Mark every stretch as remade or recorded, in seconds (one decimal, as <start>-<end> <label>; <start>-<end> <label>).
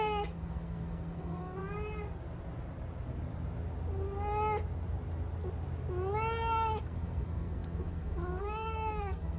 0.0-1.6 remade; 1.6-6.8 recorded; 6.8-9.4 remade